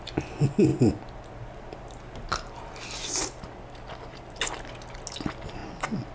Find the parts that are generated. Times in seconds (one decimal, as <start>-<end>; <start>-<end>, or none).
none